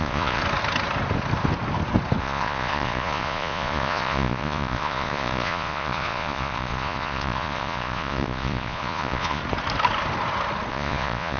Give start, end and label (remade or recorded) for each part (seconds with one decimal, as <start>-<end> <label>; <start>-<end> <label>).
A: 0.0-0.4 remade; 0.4-2.2 recorded; 2.2-9.4 remade; 9.4-10.7 recorded; 10.7-11.4 remade